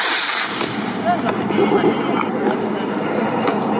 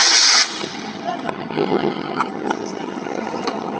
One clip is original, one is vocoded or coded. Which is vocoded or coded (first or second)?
second